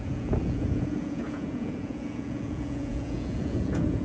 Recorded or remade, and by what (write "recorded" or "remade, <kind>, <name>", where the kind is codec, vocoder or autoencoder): remade, vocoder, Vocos